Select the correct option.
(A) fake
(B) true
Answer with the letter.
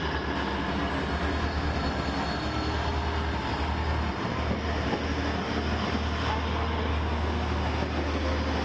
B